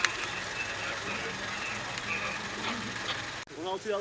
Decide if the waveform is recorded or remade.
recorded